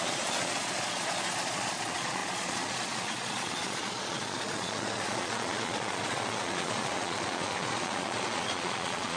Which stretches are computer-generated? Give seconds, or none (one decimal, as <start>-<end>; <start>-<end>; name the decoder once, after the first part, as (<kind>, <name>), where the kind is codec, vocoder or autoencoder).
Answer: 0.0-9.2 (vocoder, Vocos)